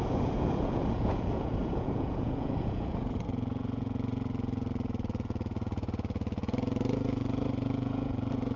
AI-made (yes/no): yes